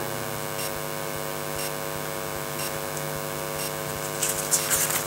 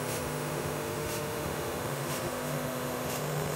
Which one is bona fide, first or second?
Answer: first